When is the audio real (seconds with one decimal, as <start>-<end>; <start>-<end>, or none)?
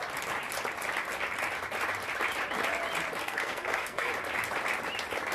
0.0-3.2; 4.1-5.3